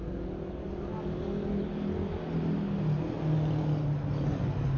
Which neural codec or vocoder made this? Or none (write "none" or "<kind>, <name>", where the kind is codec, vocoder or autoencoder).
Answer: none